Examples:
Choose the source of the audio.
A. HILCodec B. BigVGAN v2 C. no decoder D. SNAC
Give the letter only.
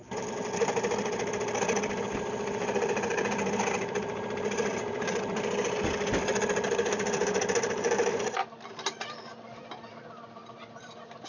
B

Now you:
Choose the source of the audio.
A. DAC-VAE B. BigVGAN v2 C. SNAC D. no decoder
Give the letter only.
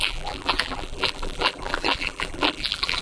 B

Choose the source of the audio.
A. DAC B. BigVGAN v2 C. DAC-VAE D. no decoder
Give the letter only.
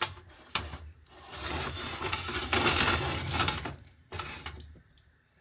B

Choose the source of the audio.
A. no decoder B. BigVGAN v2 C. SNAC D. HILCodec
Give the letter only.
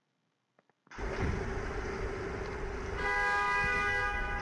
A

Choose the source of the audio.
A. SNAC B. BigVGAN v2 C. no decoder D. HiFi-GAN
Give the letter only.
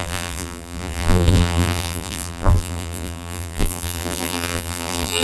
B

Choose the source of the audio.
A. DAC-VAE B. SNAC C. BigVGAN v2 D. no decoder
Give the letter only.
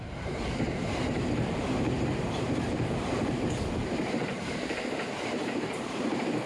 C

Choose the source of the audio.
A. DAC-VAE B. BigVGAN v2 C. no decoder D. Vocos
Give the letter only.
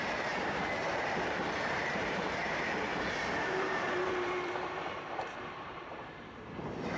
B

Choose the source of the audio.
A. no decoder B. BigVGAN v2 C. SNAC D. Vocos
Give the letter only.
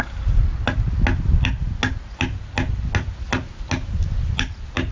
A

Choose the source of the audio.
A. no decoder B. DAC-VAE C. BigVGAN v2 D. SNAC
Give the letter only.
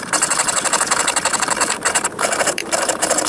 C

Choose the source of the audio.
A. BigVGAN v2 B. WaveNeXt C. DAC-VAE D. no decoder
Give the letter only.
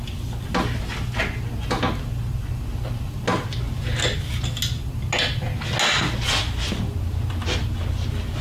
D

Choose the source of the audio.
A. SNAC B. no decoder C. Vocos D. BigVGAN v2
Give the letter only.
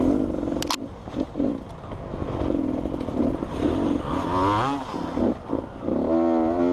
B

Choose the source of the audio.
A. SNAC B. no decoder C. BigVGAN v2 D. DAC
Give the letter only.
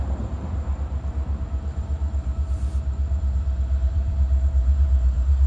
C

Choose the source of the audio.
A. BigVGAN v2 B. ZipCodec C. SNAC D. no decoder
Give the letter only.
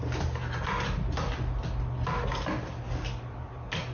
D